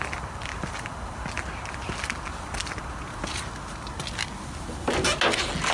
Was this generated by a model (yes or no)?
no